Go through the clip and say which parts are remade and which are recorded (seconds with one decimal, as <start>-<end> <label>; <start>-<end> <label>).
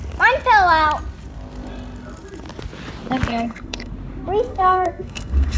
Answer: 0.0-3.3 recorded; 3.3-3.9 remade; 3.9-4.5 recorded; 4.5-5.6 remade